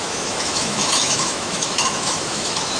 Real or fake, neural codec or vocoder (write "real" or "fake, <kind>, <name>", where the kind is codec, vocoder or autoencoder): fake, autoencoder, DAC-VAE